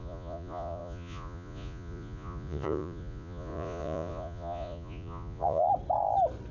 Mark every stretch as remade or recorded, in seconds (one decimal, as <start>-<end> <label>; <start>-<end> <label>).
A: 0.0-5.7 remade; 5.7-6.5 recorded